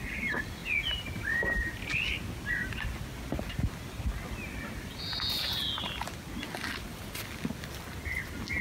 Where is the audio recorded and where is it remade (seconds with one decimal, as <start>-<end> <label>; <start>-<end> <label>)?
0.0-8.6 recorded